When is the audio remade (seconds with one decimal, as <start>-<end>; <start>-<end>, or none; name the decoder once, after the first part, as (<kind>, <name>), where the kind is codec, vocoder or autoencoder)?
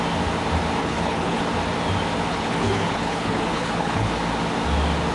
0.8-1.4 (codec, HILCodec); 2.3-4.1